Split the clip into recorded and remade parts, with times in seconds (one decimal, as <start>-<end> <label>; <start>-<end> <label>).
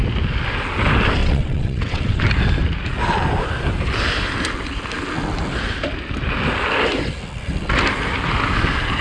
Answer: 0.0-1.2 recorded; 1.2-2.2 remade; 2.2-9.0 recorded